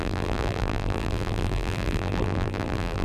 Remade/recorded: remade